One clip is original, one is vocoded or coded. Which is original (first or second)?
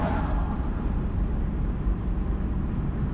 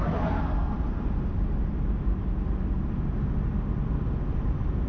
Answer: second